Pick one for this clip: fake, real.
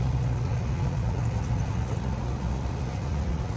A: fake